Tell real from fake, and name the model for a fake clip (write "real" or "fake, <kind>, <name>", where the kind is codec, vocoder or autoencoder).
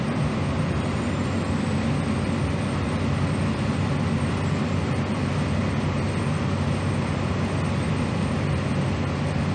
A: real